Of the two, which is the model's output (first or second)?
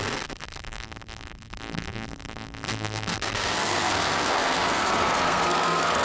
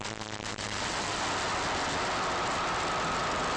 first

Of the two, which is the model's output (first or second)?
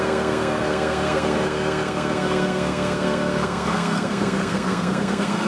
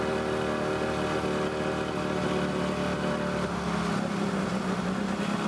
first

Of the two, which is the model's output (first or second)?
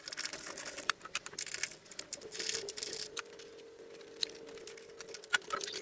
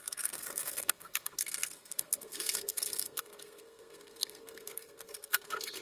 second